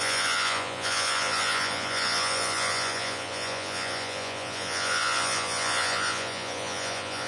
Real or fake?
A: fake